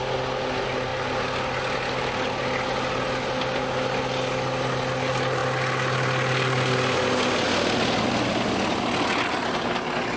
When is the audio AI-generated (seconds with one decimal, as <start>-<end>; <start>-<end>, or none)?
none